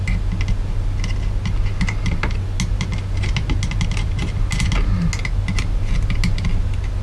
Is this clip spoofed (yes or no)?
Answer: no